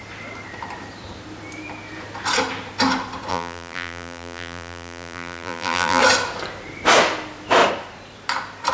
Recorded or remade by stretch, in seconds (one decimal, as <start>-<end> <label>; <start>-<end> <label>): 0.0-3.3 recorded; 3.3-6.0 remade; 6.0-8.7 recorded